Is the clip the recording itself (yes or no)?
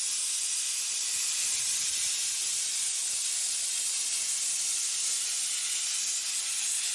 yes